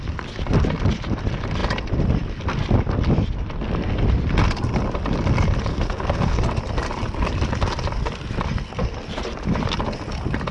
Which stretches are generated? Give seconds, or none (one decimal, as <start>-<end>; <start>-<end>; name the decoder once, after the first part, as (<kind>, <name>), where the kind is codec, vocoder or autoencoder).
5.7-6.5 (codec, SNAC)